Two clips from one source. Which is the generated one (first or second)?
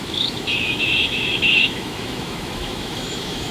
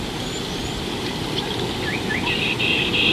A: first